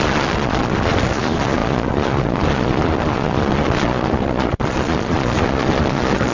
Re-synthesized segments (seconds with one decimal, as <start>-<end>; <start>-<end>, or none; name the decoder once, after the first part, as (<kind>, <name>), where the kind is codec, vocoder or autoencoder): 0.0-6.3 (vocoder, Vocos)